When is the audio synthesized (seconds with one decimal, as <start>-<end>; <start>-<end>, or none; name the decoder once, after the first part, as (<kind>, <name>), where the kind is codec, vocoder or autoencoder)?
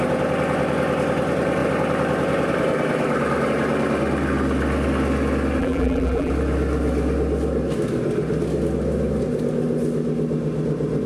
5.6-6.3 (vocoder, BigVGAN v2)